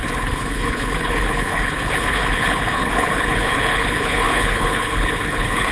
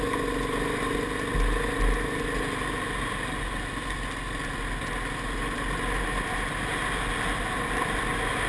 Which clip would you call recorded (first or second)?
second